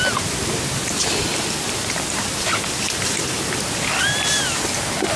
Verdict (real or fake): real